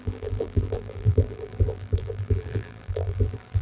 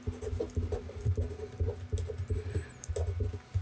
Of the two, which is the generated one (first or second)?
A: first